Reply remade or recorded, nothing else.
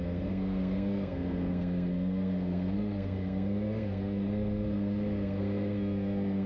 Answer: remade